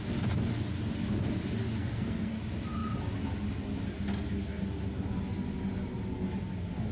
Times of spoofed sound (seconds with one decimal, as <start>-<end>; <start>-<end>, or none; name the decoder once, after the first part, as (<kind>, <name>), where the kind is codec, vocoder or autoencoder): 1.8-2.4 (codec, SNAC)